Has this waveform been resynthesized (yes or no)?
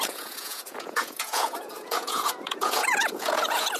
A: yes